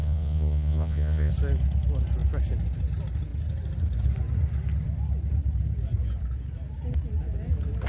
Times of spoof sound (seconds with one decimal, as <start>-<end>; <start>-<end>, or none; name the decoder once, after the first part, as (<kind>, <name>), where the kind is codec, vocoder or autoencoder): 0.0-1.3 (vocoder, Vocos)